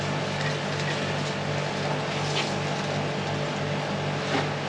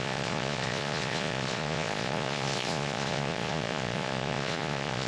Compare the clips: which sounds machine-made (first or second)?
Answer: second